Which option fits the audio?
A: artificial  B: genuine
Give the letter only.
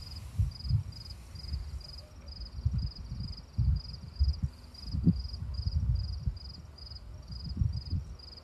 B